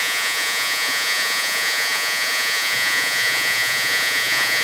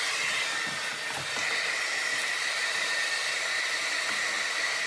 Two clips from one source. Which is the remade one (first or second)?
first